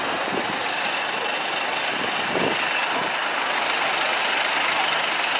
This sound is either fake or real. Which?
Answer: real